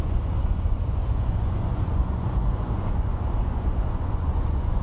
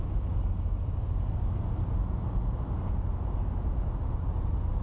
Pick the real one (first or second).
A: second